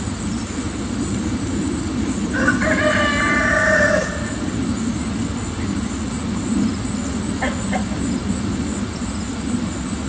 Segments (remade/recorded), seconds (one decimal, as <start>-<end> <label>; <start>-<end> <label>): 0.0-10.1 recorded